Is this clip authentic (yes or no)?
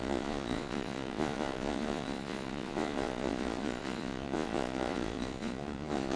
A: no